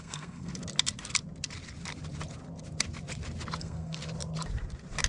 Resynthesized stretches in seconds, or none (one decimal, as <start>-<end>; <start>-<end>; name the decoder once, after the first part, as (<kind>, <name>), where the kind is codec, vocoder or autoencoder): 0.0-0.5 (codec, SNAC); 3.6-4.0

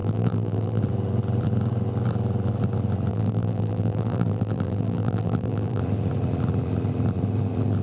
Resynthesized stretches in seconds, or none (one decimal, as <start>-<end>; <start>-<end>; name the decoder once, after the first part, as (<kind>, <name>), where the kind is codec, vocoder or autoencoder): 0.0-0.8 (vocoder, BigVGAN v2); 3.1-5.8

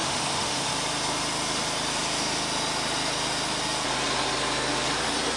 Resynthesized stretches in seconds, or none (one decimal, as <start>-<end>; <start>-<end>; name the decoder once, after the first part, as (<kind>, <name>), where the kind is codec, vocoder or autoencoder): 0.0-0.7 (autoencoder, DAC-VAE)